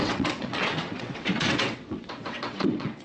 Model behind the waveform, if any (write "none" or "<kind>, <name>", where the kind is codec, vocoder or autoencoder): vocoder, WaveNeXt